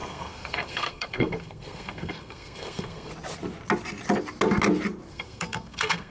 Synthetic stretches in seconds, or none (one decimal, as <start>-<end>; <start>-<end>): 0.0-3.1; 5.1-6.1